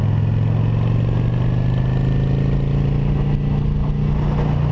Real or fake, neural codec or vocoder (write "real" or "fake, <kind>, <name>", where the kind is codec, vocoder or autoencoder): real